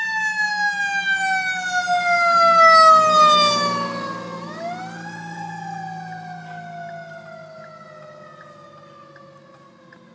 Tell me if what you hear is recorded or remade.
recorded